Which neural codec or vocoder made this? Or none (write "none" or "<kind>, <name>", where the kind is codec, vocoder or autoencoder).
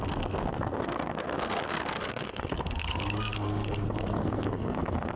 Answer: codec, SNAC